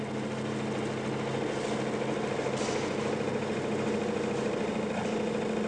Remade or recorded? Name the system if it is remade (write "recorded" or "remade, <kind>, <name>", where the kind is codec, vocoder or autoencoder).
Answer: recorded